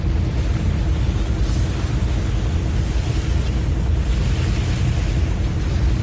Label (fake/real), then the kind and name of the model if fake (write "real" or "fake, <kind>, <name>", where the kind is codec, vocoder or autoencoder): real